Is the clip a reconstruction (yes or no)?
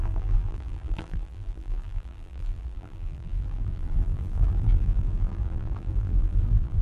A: yes